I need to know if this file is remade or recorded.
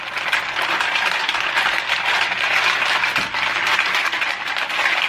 recorded